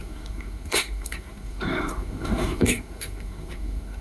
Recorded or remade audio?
remade